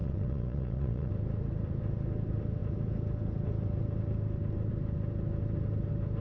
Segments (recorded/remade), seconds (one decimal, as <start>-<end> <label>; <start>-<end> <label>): 0.0-1.1 remade; 1.1-6.2 recorded